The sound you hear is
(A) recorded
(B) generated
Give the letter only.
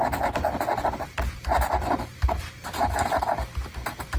A